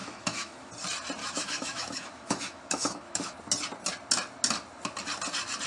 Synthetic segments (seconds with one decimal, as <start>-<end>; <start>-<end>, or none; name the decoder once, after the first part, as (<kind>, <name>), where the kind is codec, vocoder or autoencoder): 0.0-0.7 (autoencoder, DAC-VAE); 1.2-3.4